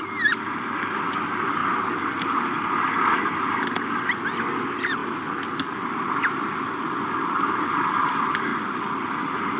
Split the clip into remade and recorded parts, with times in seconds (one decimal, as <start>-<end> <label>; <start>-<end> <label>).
0.0-9.6 recorded